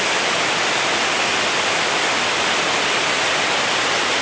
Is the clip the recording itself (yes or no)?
yes